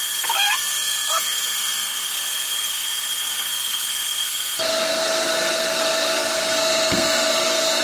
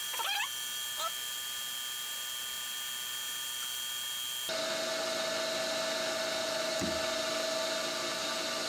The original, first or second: second